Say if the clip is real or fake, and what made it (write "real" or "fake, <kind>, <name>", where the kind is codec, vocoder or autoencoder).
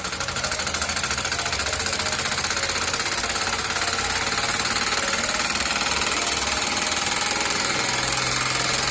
real